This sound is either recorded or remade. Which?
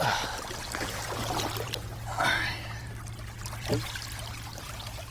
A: remade